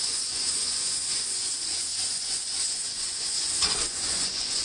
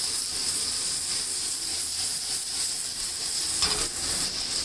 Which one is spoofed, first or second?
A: first